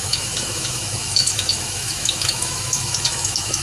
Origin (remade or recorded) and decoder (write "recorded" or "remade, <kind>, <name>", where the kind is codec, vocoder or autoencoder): remade, autoencoder, DAC-VAE